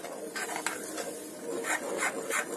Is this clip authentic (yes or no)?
yes